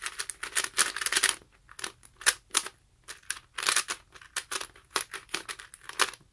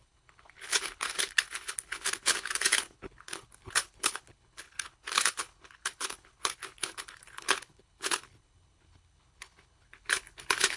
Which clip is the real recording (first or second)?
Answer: first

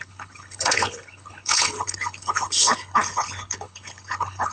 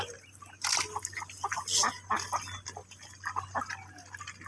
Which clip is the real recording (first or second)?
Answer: second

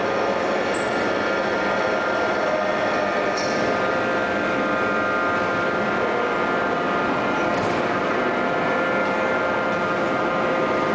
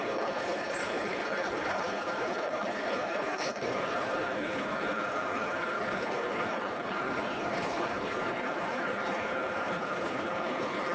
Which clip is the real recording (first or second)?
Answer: first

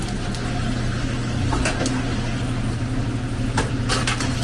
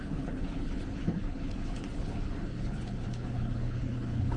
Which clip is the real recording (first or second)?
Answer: first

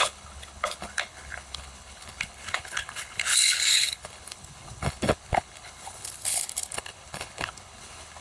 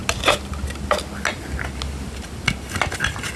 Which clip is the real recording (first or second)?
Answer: second